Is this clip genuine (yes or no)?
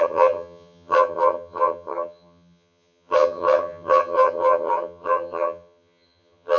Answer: no